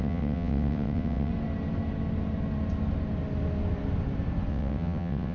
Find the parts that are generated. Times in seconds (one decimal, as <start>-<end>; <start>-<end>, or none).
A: 0.0-1.3; 4.5-5.3